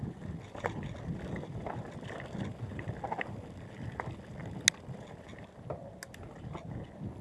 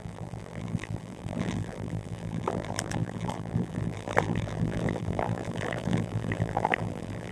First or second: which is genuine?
first